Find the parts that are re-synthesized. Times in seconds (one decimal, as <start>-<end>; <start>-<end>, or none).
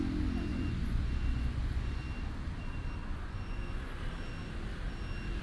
0.5-2.0; 3.0-4.0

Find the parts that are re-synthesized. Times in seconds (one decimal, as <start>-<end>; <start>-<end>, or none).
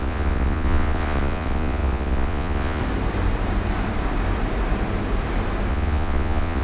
0.0-2.8; 5.7-6.6